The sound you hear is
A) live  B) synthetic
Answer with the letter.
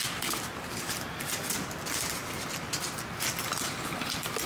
A